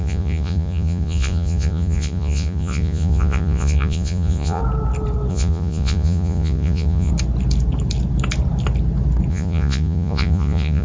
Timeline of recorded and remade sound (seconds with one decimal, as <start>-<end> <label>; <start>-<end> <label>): 0.0-4.6 remade; 4.6-5.3 recorded; 5.3-7.1 remade; 7.1-9.3 recorded; 9.3-10.8 remade